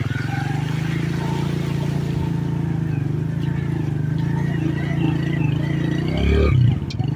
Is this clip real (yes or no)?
yes